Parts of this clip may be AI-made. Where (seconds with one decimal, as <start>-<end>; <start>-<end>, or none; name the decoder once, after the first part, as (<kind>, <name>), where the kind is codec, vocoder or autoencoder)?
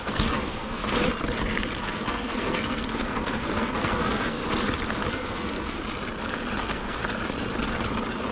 0.0-0.8 (codec, SNAC); 1.8-4.4; 5.1-5.8; 6.6-7.0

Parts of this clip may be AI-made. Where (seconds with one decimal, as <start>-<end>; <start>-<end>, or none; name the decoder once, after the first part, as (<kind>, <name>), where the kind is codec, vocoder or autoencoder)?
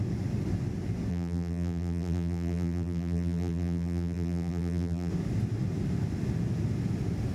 1.1-5.1 (vocoder, BigVGAN v2)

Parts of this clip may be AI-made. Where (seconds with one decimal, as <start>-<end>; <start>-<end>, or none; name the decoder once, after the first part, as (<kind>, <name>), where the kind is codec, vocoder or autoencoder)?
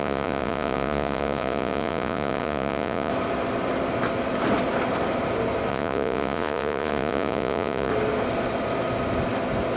0.0-3.1 (vocoder, Vocos); 5.7-7.9